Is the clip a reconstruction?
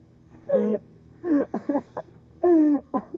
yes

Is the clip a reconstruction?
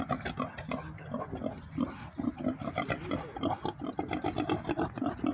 no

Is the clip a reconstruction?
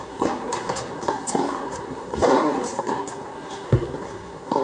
yes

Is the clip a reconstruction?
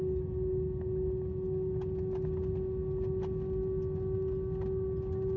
no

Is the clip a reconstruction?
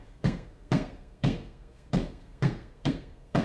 yes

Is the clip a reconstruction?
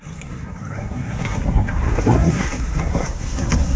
yes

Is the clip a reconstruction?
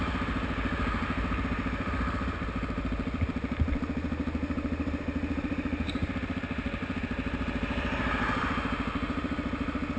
no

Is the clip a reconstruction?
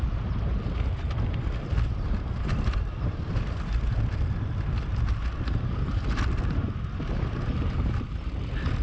no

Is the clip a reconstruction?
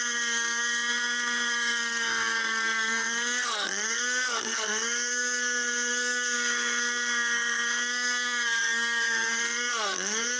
yes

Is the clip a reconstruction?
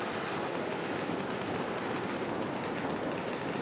no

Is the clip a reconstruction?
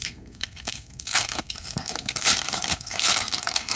yes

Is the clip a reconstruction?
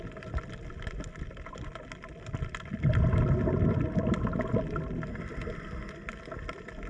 no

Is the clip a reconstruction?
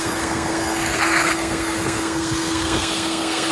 yes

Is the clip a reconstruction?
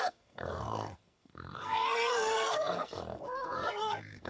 yes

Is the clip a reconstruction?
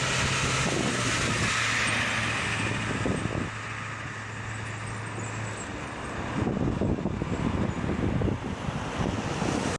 no